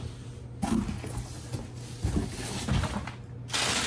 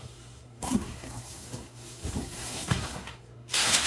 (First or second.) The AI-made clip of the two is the second